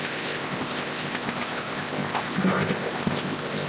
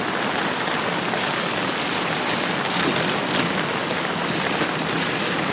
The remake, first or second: first